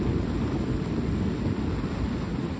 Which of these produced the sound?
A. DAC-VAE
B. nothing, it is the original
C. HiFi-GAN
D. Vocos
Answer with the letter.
B